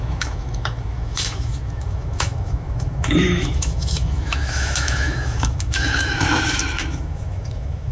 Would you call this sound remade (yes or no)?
yes